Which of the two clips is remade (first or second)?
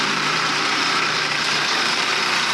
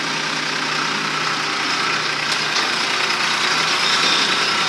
first